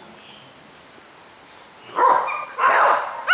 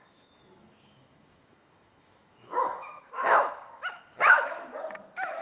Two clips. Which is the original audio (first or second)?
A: first